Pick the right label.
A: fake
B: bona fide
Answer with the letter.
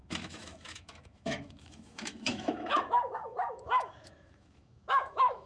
A